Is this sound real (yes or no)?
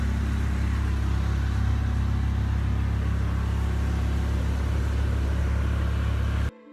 yes